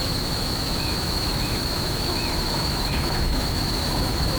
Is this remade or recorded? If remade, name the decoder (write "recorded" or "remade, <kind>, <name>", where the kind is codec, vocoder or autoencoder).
remade, autoencoder, DAC-VAE